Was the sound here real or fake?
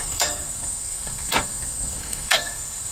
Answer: fake